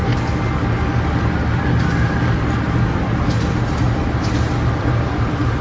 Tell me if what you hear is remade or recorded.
recorded